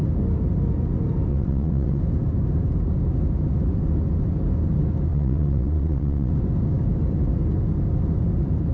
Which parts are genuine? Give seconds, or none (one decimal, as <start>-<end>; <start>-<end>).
0.0-1.3; 2.0-5.1; 6.3-8.7